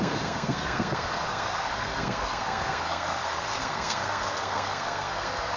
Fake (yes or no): yes